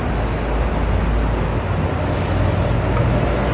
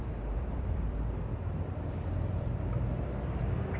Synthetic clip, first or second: second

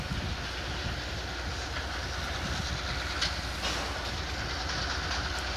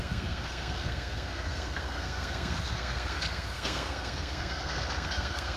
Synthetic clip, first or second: second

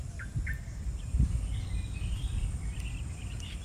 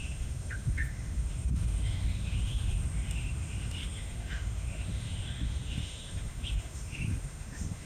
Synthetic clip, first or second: second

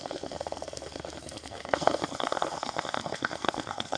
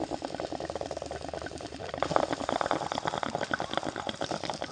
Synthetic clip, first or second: first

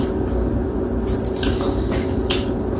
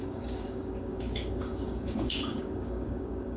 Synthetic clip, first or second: second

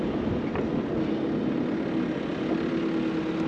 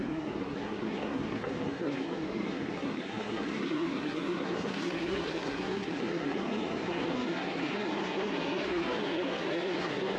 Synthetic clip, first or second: second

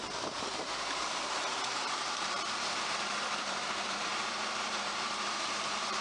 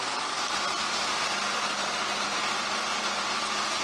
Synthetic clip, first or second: first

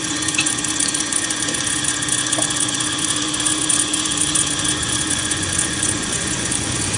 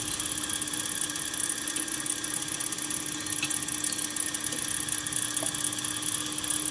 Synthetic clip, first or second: first